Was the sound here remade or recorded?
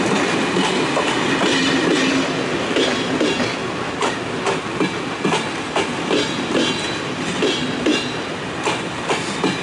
recorded